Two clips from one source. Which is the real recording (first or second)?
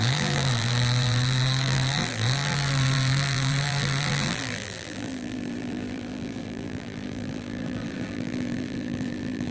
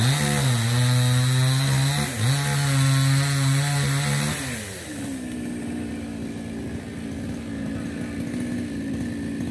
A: second